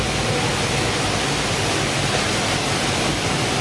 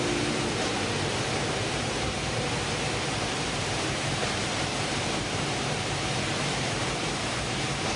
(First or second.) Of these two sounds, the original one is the first